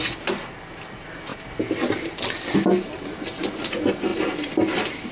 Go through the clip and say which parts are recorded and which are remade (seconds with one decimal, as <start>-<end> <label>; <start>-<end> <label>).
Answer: 0.0-5.1 recorded